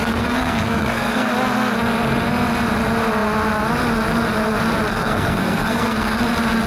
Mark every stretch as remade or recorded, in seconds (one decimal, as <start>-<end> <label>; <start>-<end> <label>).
0.0-1.3 remade; 1.3-4.9 recorded; 4.9-6.2 remade; 6.2-6.7 recorded